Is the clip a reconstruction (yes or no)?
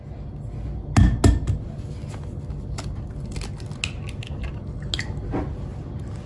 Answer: no